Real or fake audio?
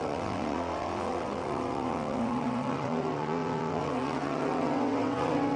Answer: fake